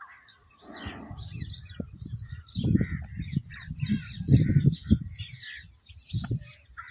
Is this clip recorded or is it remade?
remade